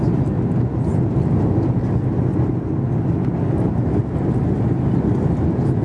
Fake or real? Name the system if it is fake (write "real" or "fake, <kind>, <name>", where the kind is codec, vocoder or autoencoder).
real